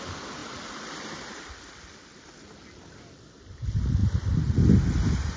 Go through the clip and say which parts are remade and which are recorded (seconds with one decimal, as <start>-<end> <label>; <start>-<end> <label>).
0.0-0.4 recorded; 0.4-3.2 remade; 3.2-4.0 recorded; 4.0-4.6 remade; 4.6-5.4 recorded